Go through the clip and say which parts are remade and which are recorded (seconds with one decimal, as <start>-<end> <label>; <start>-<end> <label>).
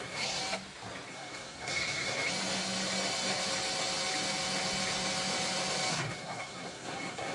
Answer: 0.0-0.4 remade; 0.4-1.1 recorded; 1.1-2.2 remade; 2.2-5.9 recorded; 5.9-7.3 remade